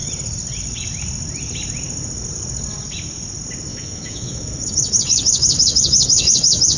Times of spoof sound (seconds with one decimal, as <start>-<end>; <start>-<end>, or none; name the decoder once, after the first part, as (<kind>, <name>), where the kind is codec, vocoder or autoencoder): 3.7-6.8 (autoencoder, DAC-VAE)